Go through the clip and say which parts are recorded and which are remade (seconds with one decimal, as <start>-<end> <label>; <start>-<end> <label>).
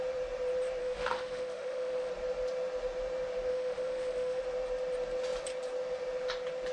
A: 0.0-0.8 recorded; 0.8-2.1 remade; 2.1-3.5 recorded; 3.5-4.4 remade; 4.4-6.7 recorded